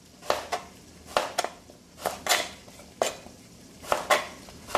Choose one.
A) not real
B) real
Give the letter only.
B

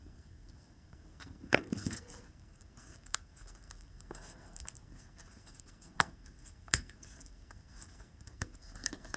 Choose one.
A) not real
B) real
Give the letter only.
A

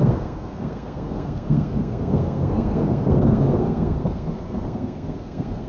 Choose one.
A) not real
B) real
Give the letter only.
A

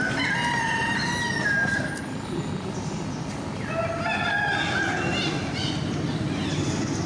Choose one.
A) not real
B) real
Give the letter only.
B